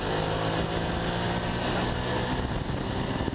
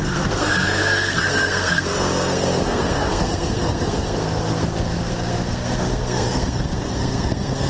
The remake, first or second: second